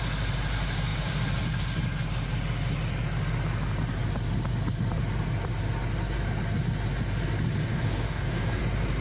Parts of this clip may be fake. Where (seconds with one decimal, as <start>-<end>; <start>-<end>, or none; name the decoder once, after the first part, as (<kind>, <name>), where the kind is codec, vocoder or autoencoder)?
7.6-8.6 (codec, DAC)

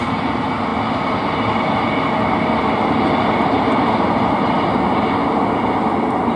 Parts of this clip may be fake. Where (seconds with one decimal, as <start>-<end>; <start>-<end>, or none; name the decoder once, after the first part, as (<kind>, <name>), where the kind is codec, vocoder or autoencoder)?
none

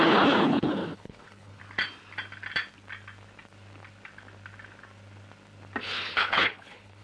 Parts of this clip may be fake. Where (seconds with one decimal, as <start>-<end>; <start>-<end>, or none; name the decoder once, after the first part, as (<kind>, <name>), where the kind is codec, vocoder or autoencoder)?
0.0-1.6 (codec, HILCodec); 5.8-7.0

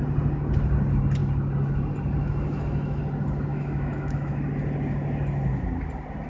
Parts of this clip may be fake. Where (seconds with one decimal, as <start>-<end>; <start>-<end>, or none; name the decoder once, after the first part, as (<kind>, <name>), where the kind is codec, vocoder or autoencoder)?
2.2-3.0 (autoencoder, DAC-VAE); 3.5-4.4

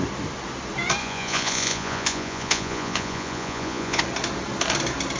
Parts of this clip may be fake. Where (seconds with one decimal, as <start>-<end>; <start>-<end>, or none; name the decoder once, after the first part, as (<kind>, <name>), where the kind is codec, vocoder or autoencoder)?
1.0-4.0 (vocoder, Vocos)

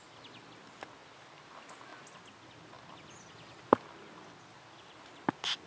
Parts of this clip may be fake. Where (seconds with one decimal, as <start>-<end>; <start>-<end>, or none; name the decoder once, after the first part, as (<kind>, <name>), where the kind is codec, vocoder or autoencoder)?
none

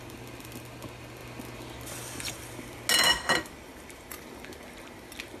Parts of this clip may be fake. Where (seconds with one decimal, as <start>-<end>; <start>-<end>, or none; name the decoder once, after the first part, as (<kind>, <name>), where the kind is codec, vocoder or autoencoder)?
3.1-4.6 (vocoder, BigVGAN v2)

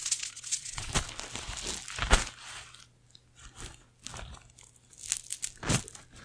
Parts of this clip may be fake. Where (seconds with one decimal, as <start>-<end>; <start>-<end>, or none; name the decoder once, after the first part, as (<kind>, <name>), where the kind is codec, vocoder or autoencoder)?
0.0-0.9 (vocoder, Vocos)